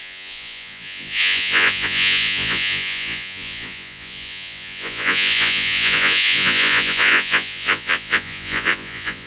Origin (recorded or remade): remade